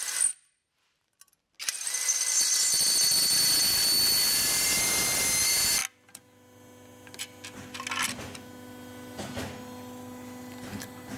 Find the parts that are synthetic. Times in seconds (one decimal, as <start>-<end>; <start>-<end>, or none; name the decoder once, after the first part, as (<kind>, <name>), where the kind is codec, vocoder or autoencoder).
none